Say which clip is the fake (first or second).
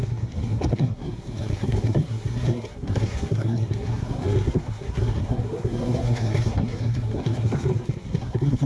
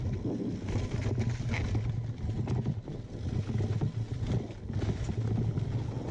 first